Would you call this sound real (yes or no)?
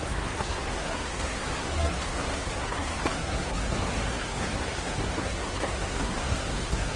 no